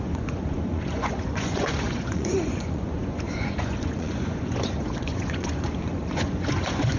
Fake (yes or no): yes